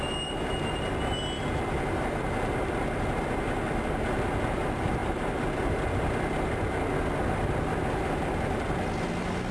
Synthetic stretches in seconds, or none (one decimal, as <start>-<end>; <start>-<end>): none